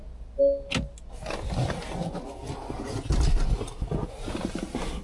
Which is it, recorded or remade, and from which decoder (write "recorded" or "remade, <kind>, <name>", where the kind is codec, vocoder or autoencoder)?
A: recorded